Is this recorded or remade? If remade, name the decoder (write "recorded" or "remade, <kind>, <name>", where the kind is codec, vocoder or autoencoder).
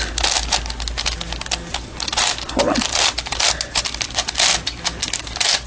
recorded